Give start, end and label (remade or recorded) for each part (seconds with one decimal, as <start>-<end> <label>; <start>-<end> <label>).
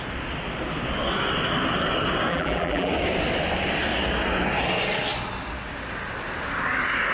0.0-2.3 recorded; 2.3-2.9 remade; 2.9-7.1 recorded